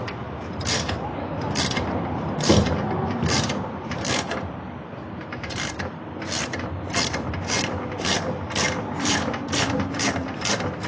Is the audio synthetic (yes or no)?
yes